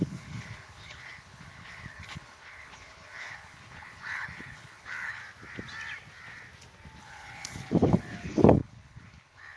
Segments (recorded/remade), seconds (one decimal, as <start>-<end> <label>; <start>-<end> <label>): 0.0-5.2 remade; 5.2-7.0 recorded; 7.0-9.6 remade